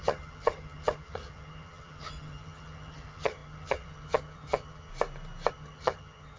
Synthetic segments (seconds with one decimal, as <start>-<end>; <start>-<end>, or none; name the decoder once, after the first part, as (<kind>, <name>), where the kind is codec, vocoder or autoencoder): 0.0-4.9 (vocoder, HiFi-GAN); 5.5-6.4